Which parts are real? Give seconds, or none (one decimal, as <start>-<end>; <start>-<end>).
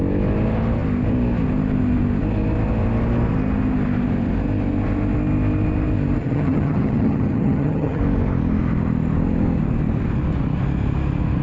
0.0-6.2; 8.0-11.4